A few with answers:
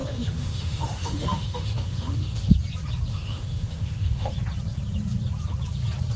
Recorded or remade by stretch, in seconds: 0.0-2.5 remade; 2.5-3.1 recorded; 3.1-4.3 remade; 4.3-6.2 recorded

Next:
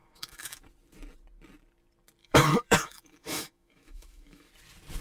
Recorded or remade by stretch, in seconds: 0.0-0.6 remade; 0.6-2.2 recorded; 2.2-4.5 remade; 4.5-5.0 recorded

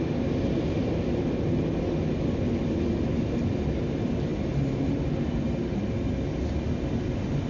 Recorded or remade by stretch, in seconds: 0.0-7.5 recorded